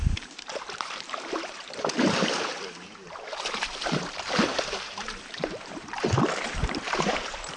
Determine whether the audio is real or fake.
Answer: fake